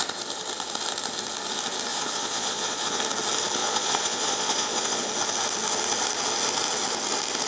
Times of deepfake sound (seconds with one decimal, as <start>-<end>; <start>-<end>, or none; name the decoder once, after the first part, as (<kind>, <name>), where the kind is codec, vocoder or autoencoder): 1.9-3.0 (vocoder, Vocos); 3.6-5.1